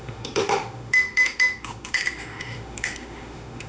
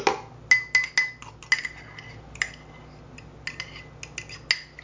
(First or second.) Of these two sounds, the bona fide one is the second